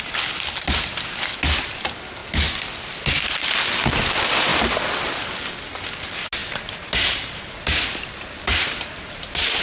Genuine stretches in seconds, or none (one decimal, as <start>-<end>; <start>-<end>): 0.0-6.4